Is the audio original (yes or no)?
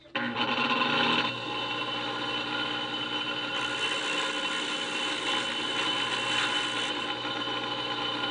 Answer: yes